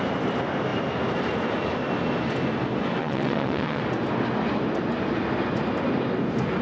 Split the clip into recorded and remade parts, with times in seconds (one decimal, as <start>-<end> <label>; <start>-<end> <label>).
0.0-3.0 recorded; 3.0-3.8 remade; 3.8-6.6 recorded